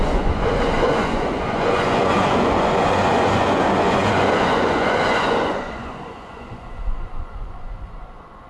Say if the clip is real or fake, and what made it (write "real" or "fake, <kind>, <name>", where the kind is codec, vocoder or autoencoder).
fake, vocoder, Vocos